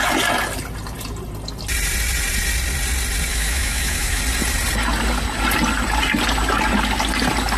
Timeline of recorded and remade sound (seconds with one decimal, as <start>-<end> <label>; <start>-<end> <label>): 0.0-3.3 recorded; 3.3-4.2 remade; 4.2-7.6 recorded